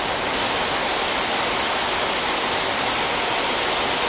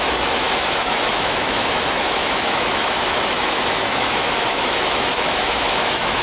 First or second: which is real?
first